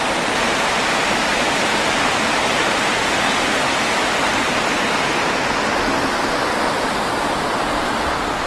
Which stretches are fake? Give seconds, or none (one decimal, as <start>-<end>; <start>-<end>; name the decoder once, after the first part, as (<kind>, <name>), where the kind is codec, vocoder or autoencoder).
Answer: none